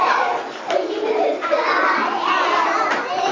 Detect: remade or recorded recorded